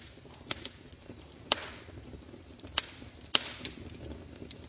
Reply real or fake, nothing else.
fake